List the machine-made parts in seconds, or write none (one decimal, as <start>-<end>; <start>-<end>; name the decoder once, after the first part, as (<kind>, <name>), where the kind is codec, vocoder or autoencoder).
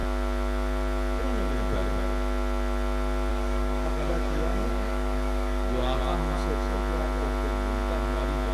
3.3-6.0 (codec, DAC)